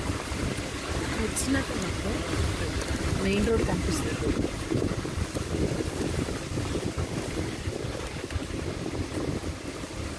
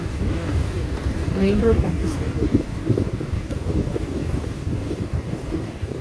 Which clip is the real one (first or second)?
first